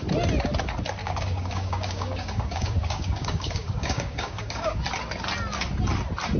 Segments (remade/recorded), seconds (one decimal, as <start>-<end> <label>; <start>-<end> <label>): 0.0-1.0 recorded; 1.0-4.8 remade; 4.8-6.4 recorded

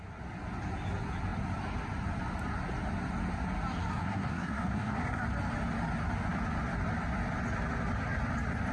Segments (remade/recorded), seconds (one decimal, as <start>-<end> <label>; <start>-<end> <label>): 0.0-3.9 recorded; 3.9-5.2 remade; 5.2-8.7 recorded

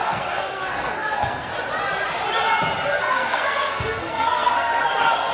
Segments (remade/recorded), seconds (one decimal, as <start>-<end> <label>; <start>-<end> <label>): 0.0-1.5 remade; 1.5-3.0 recorded; 3.0-5.3 remade

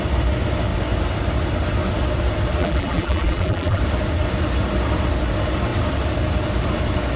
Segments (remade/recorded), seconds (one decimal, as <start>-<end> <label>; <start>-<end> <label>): 0.0-2.6 recorded; 2.6-3.8 remade; 3.8-7.2 recorded